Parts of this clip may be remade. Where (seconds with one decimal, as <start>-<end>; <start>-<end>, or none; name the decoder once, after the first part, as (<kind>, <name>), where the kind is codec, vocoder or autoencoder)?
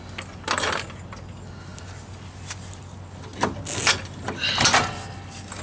none